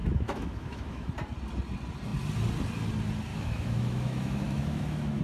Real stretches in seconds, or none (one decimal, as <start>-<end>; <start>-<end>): 1.1-3.3